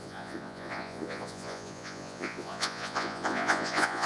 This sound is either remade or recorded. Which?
remade